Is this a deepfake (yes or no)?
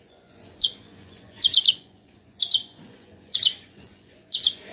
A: yes